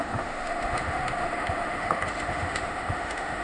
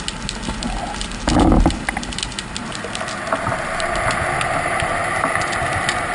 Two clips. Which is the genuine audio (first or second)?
second